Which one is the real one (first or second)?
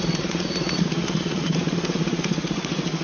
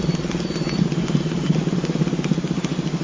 second